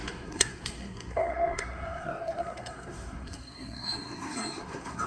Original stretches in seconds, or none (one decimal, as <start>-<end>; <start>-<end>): none